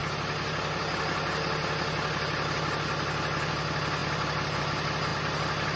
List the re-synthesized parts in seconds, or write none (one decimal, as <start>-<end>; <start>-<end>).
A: none